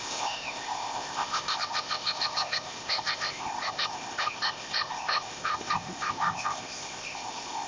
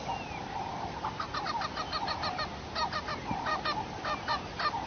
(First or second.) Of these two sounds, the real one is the second